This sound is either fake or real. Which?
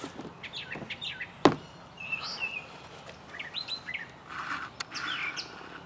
real